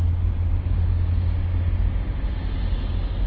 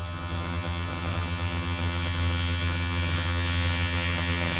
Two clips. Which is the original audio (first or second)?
first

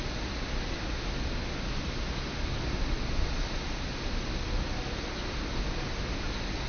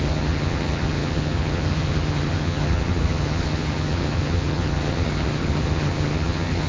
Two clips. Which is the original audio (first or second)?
first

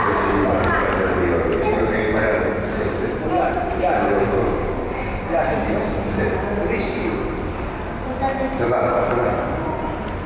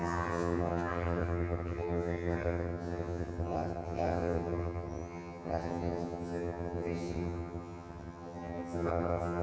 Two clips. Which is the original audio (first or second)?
first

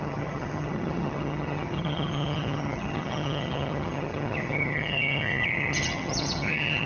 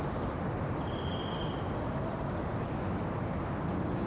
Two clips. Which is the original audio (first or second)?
second